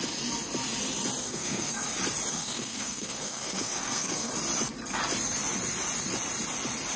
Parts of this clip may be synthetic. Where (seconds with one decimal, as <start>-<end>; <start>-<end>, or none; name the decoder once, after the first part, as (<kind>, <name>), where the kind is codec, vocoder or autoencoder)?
1.2-1.7 (codec, SNAC); 2.3-4.3